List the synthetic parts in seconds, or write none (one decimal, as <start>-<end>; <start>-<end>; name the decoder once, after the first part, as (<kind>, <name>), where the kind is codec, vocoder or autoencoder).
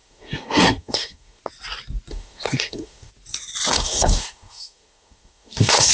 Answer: 0.0-1.4 (codec, SNAC); 2.1-3.1; 3.7-5.9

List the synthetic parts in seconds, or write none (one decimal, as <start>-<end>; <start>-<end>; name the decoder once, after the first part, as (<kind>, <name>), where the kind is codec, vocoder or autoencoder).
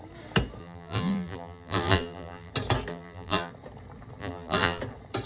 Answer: 0.6-2.5 (vocoder, BigVGAN v2); 2.9-3.5; 4.2-4.8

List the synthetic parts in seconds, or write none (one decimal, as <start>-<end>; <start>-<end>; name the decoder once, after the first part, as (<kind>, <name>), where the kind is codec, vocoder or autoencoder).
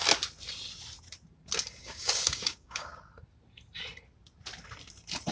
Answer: 1.8-3.0 (codec, DAC)